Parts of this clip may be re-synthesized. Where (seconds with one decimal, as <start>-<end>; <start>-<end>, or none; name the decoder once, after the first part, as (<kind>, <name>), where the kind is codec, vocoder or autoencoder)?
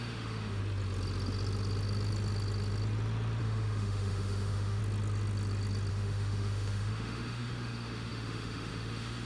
0.0-0.6 (autoencoder, DAC-VAE); 3.4-4.8; 5.9-9.3